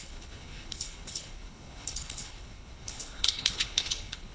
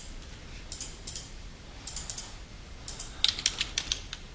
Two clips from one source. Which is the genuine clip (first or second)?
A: second